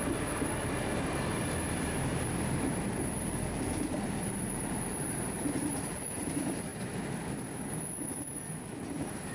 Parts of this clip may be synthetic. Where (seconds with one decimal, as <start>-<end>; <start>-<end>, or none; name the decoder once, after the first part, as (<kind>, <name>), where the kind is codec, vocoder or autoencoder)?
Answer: 0.0-6.7 (vocoder, BigVGAN v2); 8.9-9.3

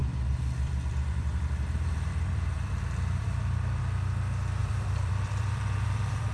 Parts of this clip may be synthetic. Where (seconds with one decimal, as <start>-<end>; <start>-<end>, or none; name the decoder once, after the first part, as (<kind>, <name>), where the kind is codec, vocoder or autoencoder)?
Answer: 0.0-3.8 (vocoder, BigVGAN v2); 4.6-6.3

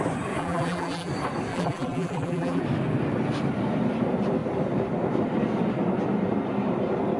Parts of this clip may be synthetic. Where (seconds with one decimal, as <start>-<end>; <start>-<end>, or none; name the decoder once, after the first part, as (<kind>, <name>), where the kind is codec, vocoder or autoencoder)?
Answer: 0.4-1.1 (vocoder, BigVGAN v2); 1.5-2.6